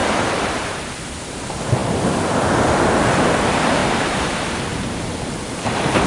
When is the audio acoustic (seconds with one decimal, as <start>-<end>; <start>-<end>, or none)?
0.9-3.8; 4.3-6.1